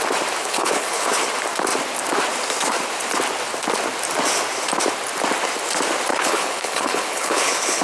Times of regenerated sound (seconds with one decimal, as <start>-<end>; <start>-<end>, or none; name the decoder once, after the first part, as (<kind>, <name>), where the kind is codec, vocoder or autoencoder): 0.4-1.1 (codec, HILCodec); 6.1-7.8